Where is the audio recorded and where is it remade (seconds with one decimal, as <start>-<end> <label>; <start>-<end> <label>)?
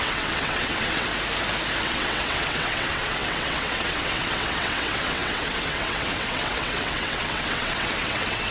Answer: 0.0-1.1 remade; 1.1-1.8 recorded; 1.8-8.5 remade